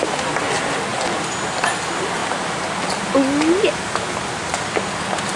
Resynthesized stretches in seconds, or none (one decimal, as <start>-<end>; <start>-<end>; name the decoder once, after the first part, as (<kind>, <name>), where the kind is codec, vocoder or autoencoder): none